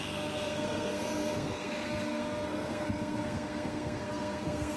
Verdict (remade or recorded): remade